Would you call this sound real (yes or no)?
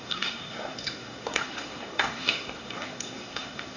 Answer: no